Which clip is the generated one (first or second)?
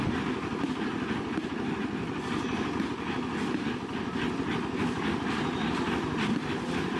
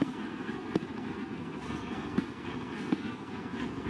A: second